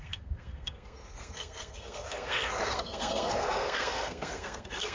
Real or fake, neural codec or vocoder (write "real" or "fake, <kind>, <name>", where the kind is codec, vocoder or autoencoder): fake, codec, SNAC